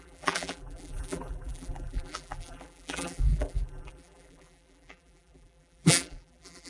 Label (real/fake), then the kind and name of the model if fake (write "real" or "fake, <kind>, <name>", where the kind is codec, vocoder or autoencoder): fake, vocoder, BigVGAN v2